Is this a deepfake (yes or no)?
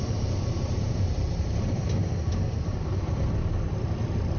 yes